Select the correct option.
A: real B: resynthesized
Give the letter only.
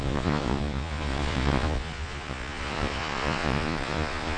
B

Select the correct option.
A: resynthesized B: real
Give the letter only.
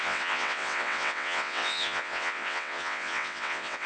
A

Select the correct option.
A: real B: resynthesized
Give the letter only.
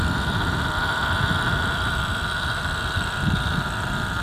B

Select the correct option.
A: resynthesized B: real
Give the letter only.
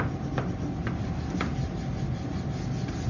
B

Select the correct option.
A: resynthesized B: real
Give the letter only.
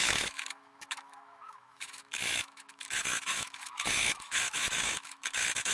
A